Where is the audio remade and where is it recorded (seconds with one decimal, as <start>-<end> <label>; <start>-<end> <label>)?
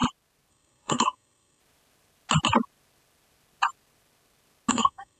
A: 0.0-0.5 recorded; 0.5-1.6 remade; 1.6-4.7 recorded; 4.7-5.2 remade